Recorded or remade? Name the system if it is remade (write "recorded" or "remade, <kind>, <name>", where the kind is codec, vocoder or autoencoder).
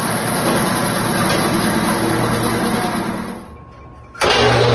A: recorded